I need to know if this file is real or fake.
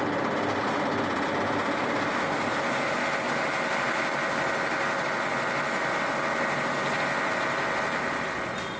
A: real